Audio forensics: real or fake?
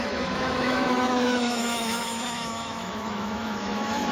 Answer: fake